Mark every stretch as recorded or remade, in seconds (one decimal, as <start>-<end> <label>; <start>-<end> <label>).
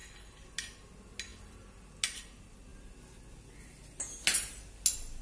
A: 0.0-5.2 recorded